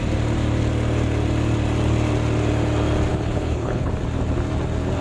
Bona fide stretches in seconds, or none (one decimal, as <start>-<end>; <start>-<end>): 0.0-3.1; 3.9-5.0